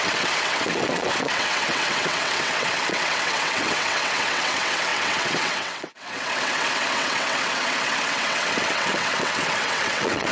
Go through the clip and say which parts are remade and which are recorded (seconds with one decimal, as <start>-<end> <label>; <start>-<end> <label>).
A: 0.0-10.3 remade